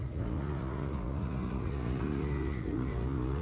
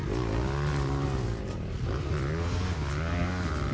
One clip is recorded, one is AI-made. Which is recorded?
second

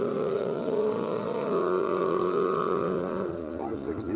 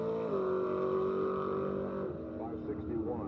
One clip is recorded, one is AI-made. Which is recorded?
second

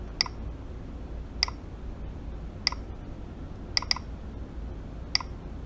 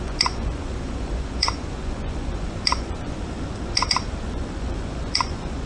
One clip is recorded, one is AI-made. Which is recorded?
first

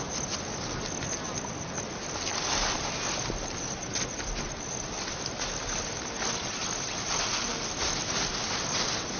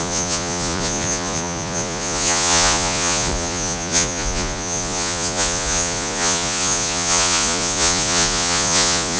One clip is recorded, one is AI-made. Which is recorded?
first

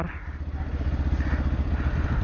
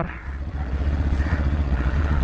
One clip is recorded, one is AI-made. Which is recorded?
first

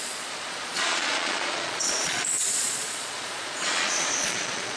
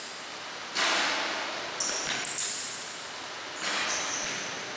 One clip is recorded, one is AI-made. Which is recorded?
second